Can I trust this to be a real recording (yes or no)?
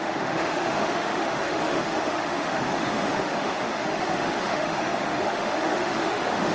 no